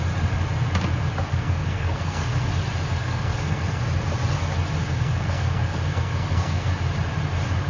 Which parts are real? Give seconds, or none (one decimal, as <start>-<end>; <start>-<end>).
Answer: 0.0-1.3; 2.5-3.0; 3.8-4.9; 6.7-7.7